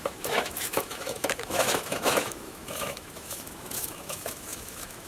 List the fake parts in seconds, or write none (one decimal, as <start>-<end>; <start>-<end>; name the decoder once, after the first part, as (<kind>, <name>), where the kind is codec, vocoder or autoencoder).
0.0-5.1 (autoencoder, DAC-VAE)